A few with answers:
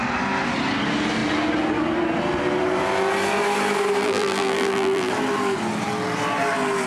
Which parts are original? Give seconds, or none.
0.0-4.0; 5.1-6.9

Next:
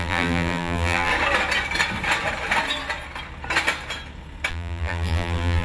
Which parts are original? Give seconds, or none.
1.1-4.5